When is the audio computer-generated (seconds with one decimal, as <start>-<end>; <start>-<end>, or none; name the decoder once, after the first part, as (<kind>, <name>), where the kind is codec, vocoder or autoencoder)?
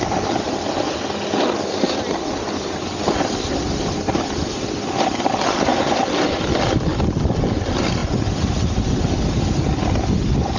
none